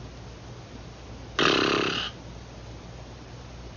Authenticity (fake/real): real